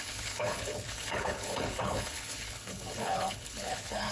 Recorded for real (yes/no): no